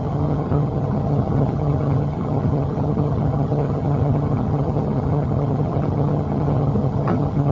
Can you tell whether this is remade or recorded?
remade